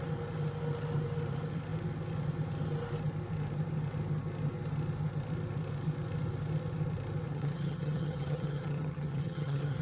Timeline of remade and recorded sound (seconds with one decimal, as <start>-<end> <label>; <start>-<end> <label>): 0.0-7.3 recorded; 7.3-9.8 remade